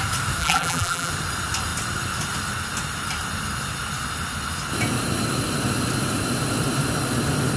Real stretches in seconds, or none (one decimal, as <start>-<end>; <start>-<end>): 0.0-0.4; 1.1-7.6